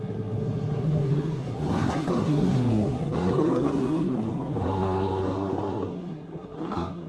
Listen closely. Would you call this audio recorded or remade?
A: remade